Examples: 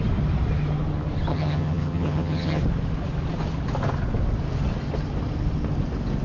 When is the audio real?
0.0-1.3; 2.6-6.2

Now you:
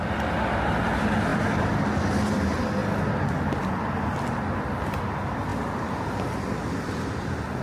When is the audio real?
0.0-7.6

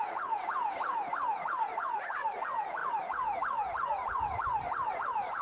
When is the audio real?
none

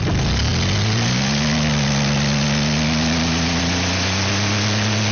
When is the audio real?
0.0-5.1

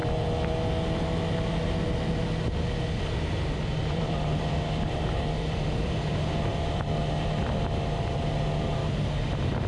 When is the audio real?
0.0-3.8; 6.8-8.8

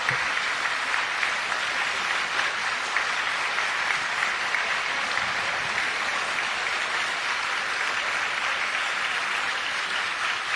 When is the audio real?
0.0-10.6